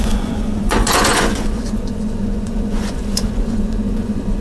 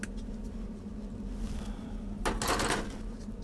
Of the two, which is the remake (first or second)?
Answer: first